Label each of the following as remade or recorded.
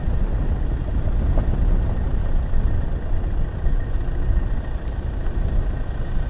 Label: recorded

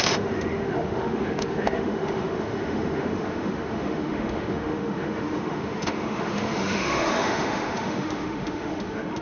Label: remade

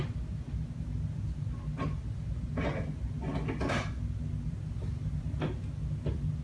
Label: recorded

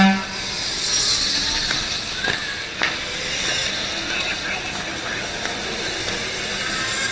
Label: recorded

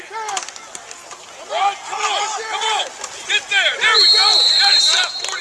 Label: recorded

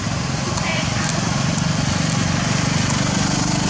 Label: recorded